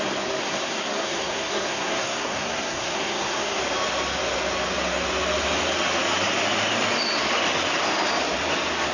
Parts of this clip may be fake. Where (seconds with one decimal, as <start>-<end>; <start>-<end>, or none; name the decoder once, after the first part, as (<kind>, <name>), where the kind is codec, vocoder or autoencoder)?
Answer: 0.4-3.6 (codec, SNAC)